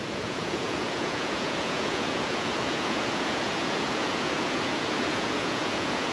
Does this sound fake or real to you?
fake